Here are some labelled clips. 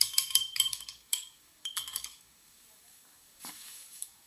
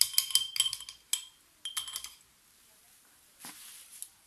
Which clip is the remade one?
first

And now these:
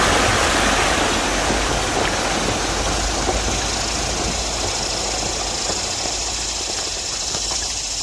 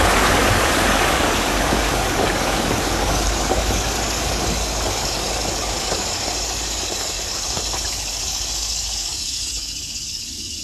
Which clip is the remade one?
second